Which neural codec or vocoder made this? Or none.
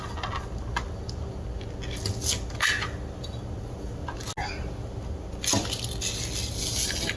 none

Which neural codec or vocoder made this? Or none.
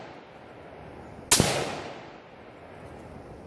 none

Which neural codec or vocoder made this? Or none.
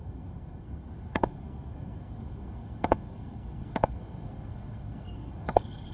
codec, SNAC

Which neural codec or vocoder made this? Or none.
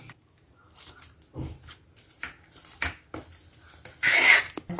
none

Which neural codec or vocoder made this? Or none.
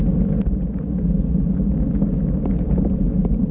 none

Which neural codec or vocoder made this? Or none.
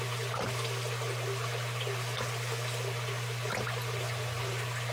none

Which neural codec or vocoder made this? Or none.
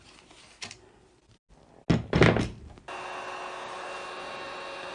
none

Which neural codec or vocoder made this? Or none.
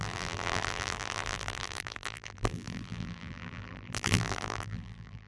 vocoder, BigVGAN v2